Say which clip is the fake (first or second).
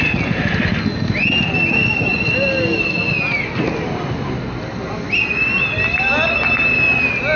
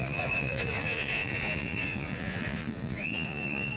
second